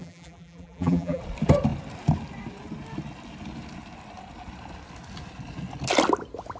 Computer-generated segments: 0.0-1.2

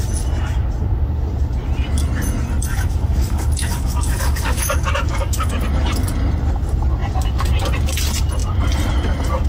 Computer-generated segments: 2.7-5.5

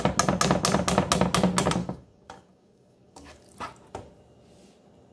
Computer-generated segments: 1.8-3.4

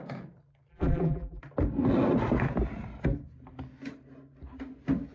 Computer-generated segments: 0.7-1.4

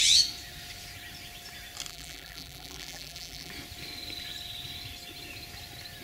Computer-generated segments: 1.9-3.5

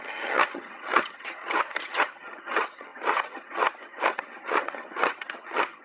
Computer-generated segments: 0.0-5.8

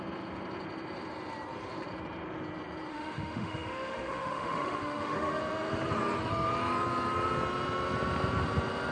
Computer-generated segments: 2.9-5.4

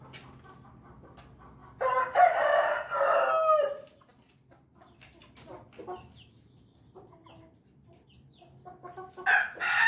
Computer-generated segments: none